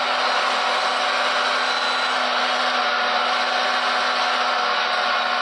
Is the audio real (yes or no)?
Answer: yes